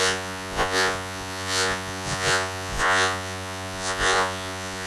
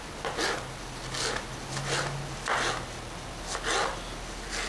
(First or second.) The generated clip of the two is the first